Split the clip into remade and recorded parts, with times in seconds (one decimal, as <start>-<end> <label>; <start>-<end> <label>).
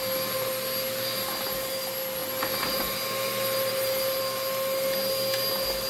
0.0-5.9 recorded